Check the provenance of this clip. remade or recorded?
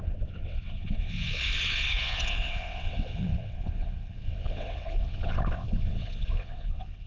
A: remade